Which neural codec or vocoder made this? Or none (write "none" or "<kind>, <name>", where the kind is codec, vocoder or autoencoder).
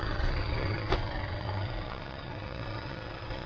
vocoder, WaveNeXt